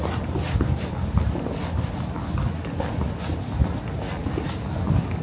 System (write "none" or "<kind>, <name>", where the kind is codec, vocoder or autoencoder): none